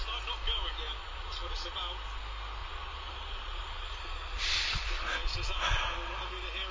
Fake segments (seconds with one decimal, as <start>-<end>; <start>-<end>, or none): 1.0-1.8; 2.6-4.8